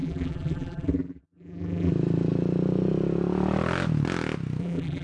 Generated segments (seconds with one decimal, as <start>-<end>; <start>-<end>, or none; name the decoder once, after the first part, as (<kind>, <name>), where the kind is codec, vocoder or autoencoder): 0.0-1.9 (vocoder, BigVGAN v2); 4.6-5.0